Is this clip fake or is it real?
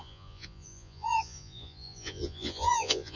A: fake